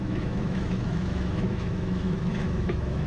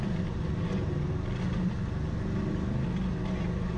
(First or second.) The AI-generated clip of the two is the first